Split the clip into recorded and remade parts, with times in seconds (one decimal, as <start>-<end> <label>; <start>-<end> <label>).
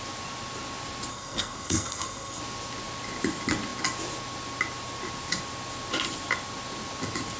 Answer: 0.0-1.1 recorded; 1.1-2.4 remade; 2.4-7.4 recorded